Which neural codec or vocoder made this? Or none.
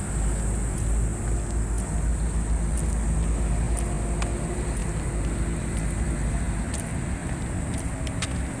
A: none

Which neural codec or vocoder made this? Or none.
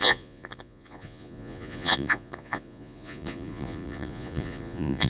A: vocoder, Vocos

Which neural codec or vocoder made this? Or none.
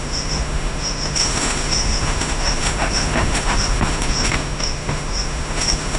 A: autoencoder, DAC-VAE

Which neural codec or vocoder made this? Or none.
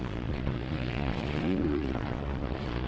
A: vocoder, Vocos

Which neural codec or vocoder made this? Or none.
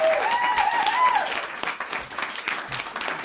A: none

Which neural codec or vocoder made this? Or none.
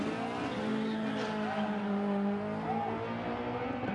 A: none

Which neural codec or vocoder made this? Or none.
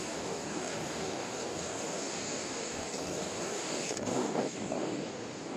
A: codec, DAC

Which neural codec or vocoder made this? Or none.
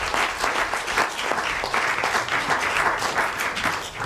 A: none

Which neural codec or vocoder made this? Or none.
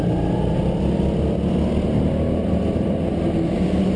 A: none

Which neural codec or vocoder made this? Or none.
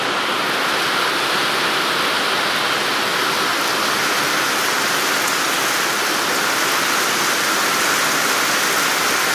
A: none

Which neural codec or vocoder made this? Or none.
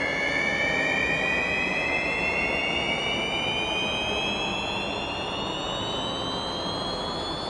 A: none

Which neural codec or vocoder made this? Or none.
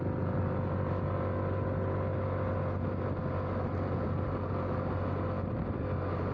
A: none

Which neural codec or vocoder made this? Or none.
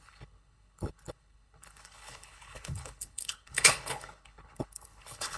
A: codec, HILCodec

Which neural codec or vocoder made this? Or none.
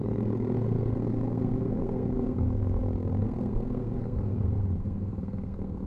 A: codec, SNAC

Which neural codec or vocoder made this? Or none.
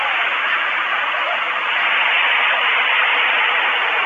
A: none